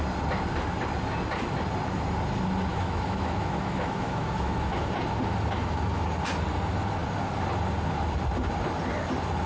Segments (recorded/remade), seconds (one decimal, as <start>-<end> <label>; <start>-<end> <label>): 0.0-2.7 recorded; 2.7-4.8 remade; 4.8-9.5 recorded

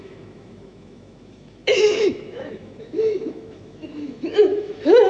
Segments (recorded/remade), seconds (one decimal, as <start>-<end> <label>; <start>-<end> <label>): 0.0-5.1 remade

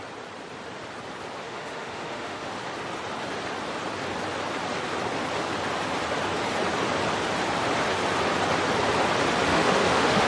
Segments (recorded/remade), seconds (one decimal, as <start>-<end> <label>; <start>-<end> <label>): 0.0-1.4 recorded; 1.4-2.5 remade; 2.5-9.5 recorded; 9.5-10.3 remade

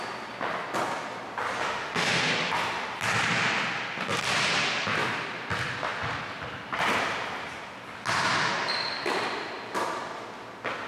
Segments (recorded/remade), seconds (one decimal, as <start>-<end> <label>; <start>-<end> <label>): 0.0-1.6 recorded; 1.6-2.3 remade; 2.3-10.9 recorded

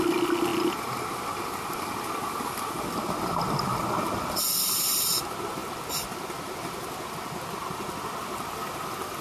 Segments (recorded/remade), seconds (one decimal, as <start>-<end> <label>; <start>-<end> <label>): 0.0-9.2 recorded

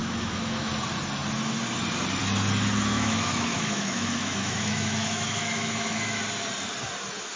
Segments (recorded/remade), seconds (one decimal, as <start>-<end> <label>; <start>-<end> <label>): 0.0-0.7 remade; 0.7-2.9 recorded; 2.9-6.2 remade; 6.2-7.4 recorded